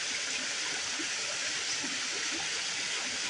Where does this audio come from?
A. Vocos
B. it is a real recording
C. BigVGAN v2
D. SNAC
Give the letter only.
B